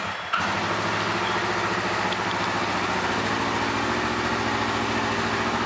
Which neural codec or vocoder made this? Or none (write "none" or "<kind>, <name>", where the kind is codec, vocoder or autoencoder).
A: none